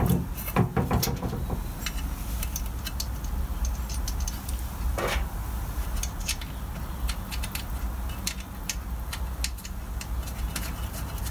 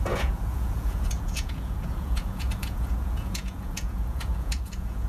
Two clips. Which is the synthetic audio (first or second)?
second